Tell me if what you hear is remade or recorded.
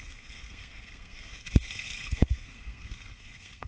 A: remade